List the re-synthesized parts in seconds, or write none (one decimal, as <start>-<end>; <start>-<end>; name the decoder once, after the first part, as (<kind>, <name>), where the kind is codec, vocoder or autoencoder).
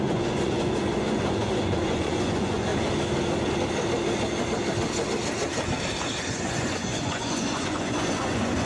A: 0.0-2.7 (vocoder, Vocos); 6.3-8.7